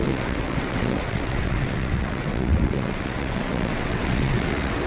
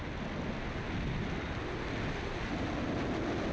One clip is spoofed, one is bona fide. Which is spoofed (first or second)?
first